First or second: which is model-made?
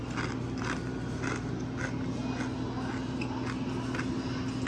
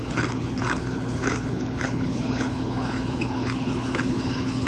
second